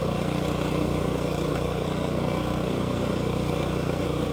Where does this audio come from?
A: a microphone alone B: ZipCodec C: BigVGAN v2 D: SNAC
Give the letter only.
D